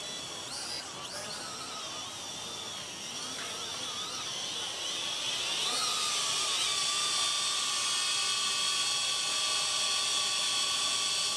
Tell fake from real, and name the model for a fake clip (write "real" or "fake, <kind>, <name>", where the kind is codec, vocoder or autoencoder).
real